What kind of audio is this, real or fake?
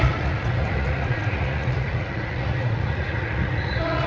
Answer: fake